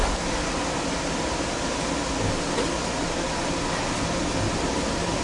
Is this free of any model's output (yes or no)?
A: yes